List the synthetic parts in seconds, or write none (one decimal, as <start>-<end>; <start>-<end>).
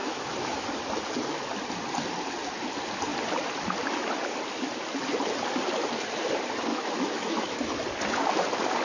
0.0-0.7; 6.7-7.8